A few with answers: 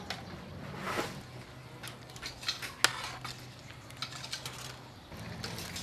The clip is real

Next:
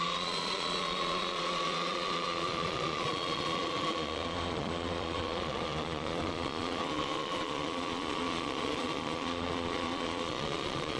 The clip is fake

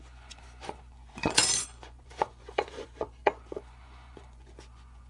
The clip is fake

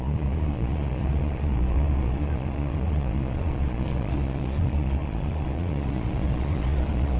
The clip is fake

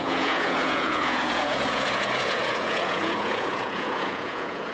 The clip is fake